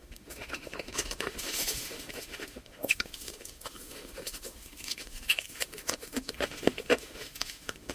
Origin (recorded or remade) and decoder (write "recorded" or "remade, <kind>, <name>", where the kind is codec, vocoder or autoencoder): remade, autoencoder, DAC-VAE